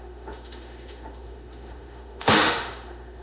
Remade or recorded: remade